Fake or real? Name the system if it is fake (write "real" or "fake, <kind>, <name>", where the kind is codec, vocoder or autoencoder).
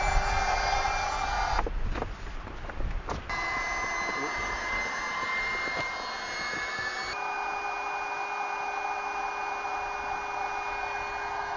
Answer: real